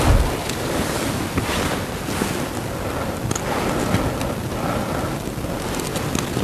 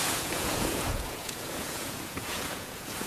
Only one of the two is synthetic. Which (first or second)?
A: second